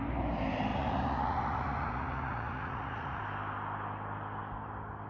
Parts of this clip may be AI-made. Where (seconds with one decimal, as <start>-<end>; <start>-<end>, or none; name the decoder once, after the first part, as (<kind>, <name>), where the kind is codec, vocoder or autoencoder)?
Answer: 0.7-3.2 (vocoder, Vocos)